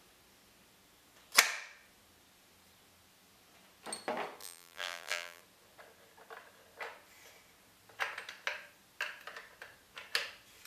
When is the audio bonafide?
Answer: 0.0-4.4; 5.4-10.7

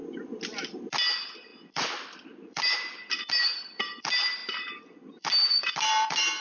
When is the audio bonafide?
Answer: 0.0-0.9

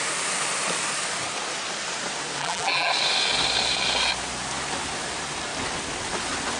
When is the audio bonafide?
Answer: 0.0-2.4; 2.9-6.6

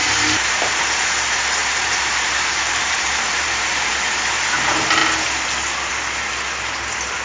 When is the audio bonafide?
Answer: 0.7-1.6; 3.9-7.2

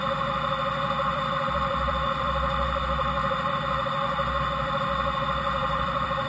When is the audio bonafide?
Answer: 0.0-1.1; 3.6-5.6

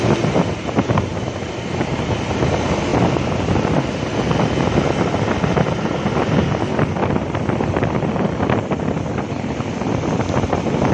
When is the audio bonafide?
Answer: 0.0-10.9

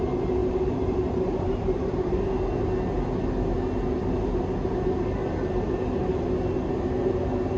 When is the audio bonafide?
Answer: 0.0-0.4; 2.3-7.6

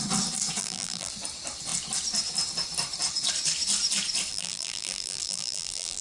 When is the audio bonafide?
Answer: 0.0-0.6; 1.1-4.3